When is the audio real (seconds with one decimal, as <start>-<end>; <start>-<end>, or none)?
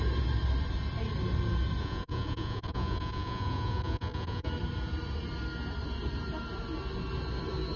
0.0-1.8; 4.5-7.8